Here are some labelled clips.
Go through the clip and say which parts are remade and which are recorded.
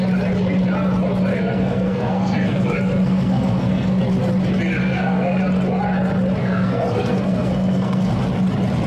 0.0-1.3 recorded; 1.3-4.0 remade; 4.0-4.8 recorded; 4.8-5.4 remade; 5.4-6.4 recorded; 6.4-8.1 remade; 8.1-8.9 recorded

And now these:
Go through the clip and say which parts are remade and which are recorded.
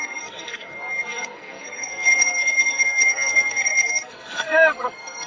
0.0-5.3 remade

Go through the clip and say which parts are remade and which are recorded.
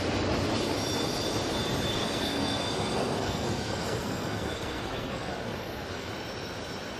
0.0-1.9 recorded; 1.9-6.1 remade; 6.1-7.0 recorded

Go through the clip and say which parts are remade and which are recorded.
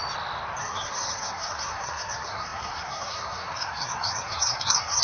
0.0-0.6 recorded; 0.6-5.0 remade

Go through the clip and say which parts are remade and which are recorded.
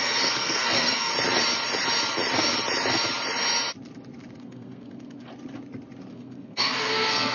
0.0-1.1 remade; 1.1-4.4 recorded; 4.4-5.3 remade; 5.3-6.1 recorded; 6.1-7.3 remade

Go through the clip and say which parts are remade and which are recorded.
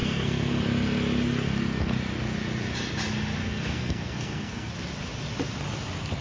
0.0-0.6 remade; 0.6-3.4 recorded; 3.4-4.7 remade; 4.7-6.2 recorded